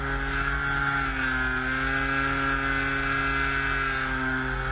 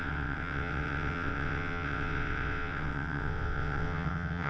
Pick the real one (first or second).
first